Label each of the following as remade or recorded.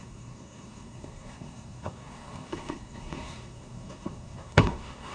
remade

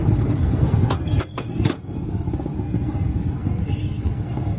remade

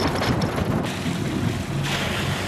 recorded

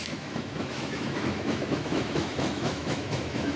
remade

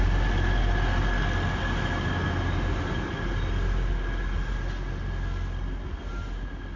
recorded